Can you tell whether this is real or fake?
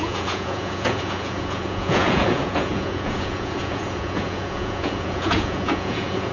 fake